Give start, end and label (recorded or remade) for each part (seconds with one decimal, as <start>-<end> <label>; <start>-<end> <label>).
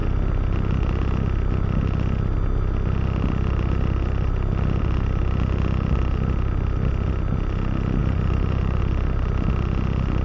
0.0-8.0 recorded; 8.0-8.8 remade; 8.8-10.2 recorded